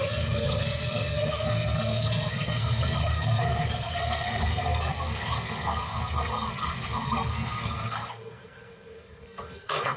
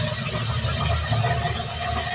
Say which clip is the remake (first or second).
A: first